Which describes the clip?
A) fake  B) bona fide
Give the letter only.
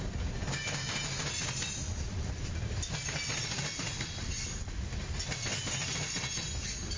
B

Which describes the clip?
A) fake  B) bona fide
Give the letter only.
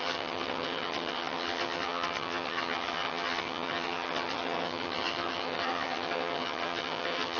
A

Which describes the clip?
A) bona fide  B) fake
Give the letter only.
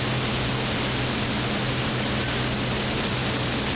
A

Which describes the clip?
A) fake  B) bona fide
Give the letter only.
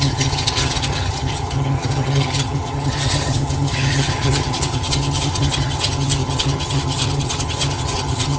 A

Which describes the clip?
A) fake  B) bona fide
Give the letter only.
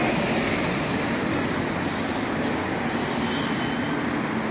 B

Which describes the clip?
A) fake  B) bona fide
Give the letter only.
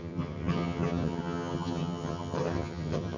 A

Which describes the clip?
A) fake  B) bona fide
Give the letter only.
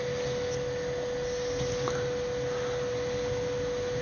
B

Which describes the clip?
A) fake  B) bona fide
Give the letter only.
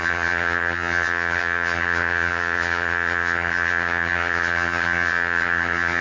A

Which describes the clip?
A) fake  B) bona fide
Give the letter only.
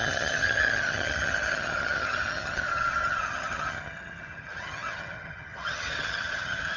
A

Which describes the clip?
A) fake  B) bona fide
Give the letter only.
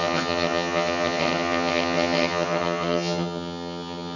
A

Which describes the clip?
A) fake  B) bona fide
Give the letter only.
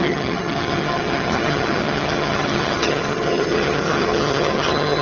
A